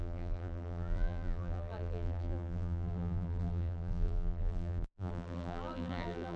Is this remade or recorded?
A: remade